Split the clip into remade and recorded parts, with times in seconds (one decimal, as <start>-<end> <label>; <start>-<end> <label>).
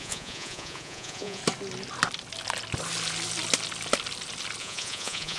0.0-1.4 remade; 1.4-4.6 recorded; 4.6-5.4 remade